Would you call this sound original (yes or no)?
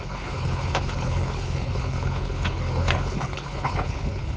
no